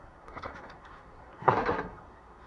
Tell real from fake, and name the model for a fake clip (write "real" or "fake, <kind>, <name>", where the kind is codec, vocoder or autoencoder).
fake, codec, SNAC